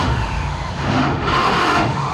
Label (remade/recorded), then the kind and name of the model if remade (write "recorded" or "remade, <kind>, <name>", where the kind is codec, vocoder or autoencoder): remade, autoencoder, DAC-VAE